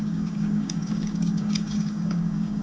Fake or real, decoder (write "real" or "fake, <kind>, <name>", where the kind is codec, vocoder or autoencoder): fake, codec, DAC